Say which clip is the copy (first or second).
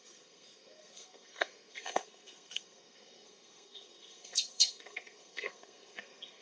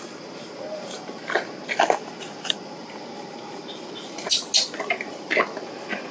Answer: first